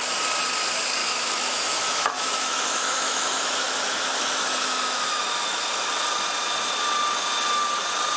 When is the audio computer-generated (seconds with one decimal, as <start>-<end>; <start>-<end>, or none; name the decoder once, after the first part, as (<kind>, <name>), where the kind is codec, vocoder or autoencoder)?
1.0-5.9 (autoencoder, DAC-VAE)